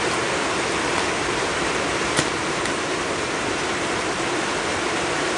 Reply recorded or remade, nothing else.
recorded